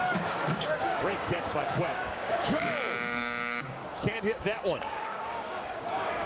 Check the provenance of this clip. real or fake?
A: fake